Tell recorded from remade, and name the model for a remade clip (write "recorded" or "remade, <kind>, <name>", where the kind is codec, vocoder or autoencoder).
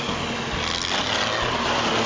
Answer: recorded